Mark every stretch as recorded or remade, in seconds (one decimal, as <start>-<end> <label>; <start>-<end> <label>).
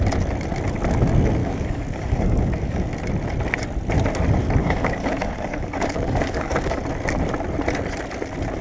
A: 0.0-1.4 recorded; 1.4-2.9 remade; 2.9-4.6 recorded; 4.6-6.8 remade; 6.8-8.6 recorded